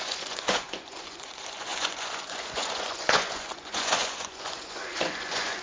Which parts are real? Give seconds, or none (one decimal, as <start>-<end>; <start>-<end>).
none